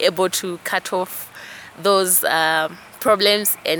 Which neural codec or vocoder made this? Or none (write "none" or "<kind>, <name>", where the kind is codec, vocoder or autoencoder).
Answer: none